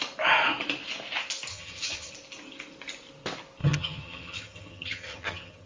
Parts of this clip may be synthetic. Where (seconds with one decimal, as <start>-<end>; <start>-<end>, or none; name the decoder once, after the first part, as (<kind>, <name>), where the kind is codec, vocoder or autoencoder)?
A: 1.5-2.1 (vocoder, HiFi-GAN); 3.6-5.7